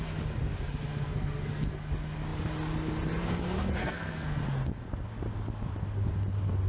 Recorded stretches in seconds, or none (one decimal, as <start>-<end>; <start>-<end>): 0.0-0.9; 1.9-3.8; 4.4-6.7